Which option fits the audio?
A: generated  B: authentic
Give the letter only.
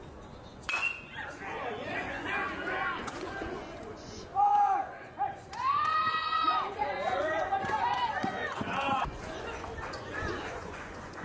A